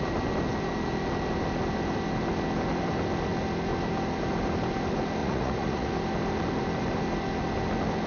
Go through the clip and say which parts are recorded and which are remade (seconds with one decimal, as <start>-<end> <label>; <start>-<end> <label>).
0.0-5.2 recorded; 5.2-5.9 remade; 5.9-8.1 recorded